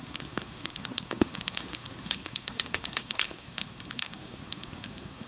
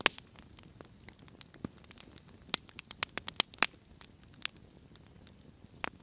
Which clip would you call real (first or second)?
second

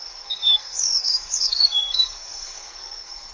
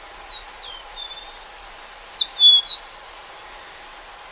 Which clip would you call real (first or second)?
second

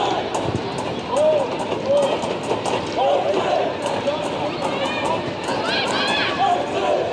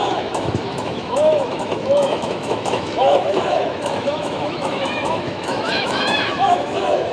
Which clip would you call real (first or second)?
first